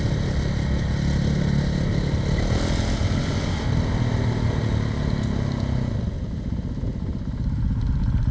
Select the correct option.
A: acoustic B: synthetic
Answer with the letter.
A